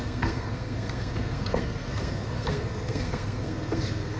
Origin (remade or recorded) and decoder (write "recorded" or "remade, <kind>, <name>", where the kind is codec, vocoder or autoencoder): remade, codec, SNAC